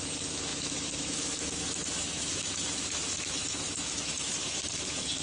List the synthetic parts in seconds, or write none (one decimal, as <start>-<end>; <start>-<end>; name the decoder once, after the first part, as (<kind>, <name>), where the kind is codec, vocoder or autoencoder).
0.0-5.2 (autoencoder, DAC-VAE)

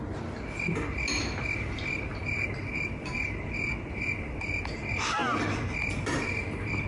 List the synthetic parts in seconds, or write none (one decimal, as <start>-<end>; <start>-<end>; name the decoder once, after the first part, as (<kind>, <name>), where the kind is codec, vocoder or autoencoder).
none